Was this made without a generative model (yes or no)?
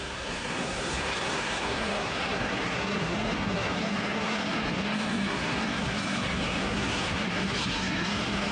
no